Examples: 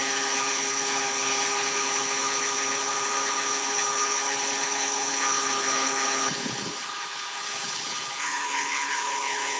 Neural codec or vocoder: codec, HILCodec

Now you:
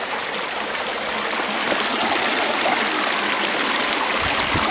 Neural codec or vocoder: none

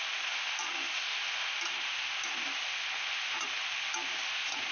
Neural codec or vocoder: none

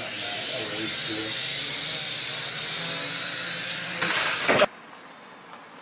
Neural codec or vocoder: none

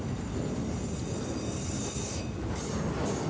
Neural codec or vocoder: none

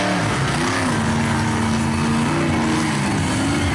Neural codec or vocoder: none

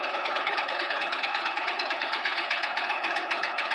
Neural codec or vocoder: codec, HILCodec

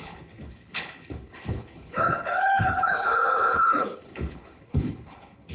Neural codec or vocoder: codec, HILCodec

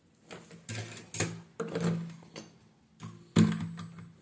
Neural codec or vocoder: none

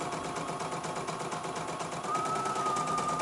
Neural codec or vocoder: none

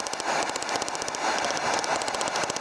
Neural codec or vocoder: none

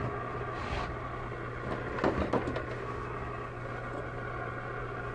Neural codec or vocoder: none